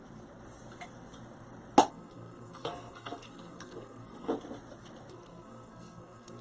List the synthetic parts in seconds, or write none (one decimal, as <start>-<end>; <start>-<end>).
1.9-4.3; 5.1-6.4